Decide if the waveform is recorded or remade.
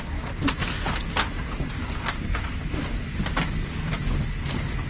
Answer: recorded